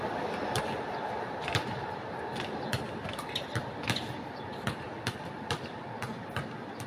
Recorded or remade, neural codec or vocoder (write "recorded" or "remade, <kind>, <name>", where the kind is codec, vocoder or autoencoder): recorded